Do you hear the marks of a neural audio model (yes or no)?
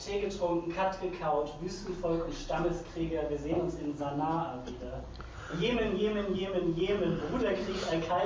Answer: no